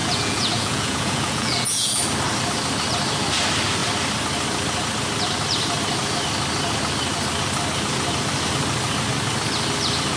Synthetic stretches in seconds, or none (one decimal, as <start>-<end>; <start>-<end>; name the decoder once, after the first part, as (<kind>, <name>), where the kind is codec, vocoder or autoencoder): 0.0-2.0 (vocoder, Vocos)